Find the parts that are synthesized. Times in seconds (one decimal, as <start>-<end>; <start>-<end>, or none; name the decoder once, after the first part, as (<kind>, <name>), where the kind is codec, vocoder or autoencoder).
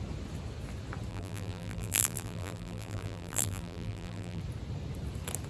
1.1-4.4 (vocoder, BigVGAN v2)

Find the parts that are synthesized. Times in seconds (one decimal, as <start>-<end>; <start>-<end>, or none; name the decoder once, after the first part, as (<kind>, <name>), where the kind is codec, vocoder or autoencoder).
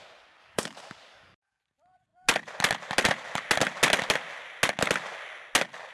0.4-1.6 (codec, DAC)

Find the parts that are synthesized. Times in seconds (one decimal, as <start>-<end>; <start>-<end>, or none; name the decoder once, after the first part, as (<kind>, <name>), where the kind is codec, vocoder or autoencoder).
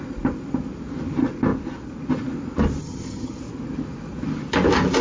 2.8-3.4 (vocoder, HiFi-GAN)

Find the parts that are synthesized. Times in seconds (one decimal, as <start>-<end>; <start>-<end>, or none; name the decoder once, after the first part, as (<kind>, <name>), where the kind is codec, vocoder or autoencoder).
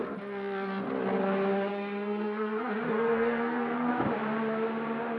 1.7-3.9 (codec, SNAC)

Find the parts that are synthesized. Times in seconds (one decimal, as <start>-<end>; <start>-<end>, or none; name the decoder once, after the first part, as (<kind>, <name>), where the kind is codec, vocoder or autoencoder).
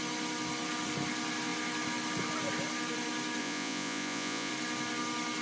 3.4-4.5 (vocoder, Vocos)